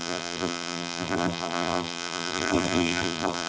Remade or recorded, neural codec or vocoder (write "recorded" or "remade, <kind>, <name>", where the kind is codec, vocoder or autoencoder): remade, vocoder, BigVGAN v2